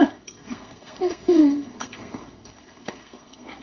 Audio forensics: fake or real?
fake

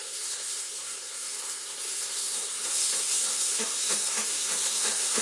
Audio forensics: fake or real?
fake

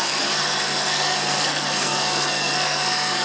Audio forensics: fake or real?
fake